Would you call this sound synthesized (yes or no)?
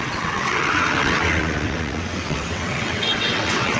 yes